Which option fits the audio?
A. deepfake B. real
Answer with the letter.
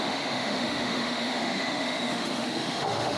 A